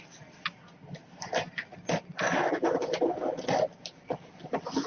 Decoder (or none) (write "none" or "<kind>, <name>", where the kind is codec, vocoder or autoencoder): none